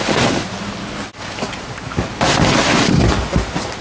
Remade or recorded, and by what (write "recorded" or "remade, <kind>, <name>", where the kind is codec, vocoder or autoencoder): recorded